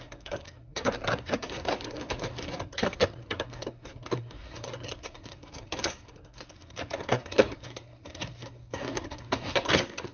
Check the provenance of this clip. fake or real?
fake